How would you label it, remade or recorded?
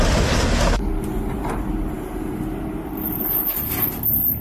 recorded